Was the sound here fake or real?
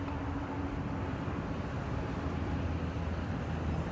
real